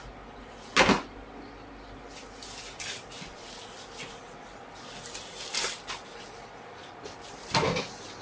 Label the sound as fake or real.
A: real